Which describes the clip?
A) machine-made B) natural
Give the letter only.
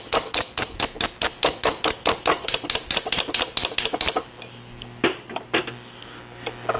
B